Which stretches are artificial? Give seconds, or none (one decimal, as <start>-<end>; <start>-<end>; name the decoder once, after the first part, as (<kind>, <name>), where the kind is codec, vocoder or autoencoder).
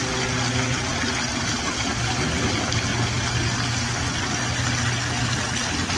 none